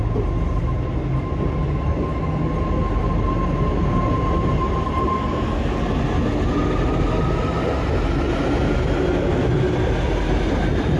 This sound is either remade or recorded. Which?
recorded